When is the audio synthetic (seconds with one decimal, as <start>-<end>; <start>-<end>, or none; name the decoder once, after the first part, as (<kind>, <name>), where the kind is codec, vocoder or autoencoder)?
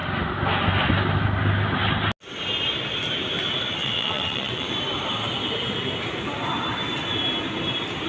3.8-4.7 (vocoder, WaveNeXt)